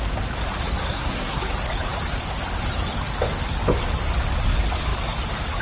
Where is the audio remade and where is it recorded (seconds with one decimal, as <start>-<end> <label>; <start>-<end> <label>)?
0.0-0.8 recorded; 0.8-1.4 remade; 1.4-5.6 recorded